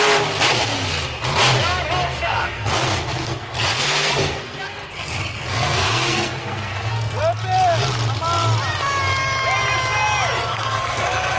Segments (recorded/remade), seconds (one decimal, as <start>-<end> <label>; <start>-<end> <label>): 0.0-2.0 recorded; 2.0-7.2 remade; 7.2-10.5 recorded; 10.5-11.4 remade